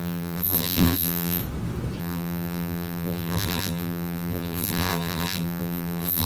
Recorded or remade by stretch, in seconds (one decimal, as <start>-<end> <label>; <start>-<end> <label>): 0.0-1.4 remade; 1.4-2.0 recorded; 2.0-6.3 remade